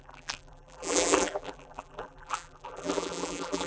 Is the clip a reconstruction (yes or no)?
yes